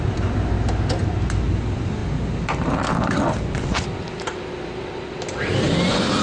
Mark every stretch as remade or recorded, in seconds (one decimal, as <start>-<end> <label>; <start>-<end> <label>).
0.0-6.2 recorded